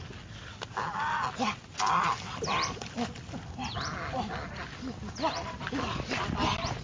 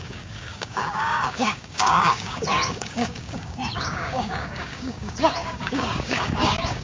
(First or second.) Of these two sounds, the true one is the first